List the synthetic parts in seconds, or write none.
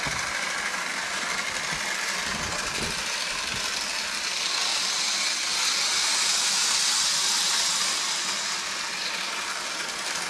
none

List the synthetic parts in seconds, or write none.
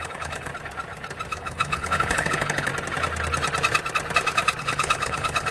0.0-0.5; 1.3-2.7; 4.6-5.5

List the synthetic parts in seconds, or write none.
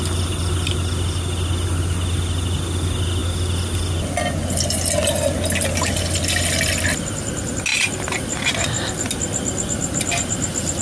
none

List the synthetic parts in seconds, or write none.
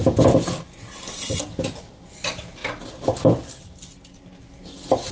none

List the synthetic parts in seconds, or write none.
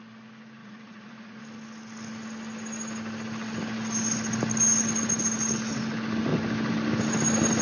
0.6-1.4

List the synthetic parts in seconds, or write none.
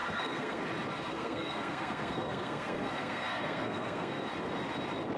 0.0-0.6; 1.1-4.2